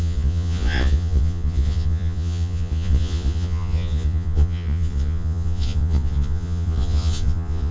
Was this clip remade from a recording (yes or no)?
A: yes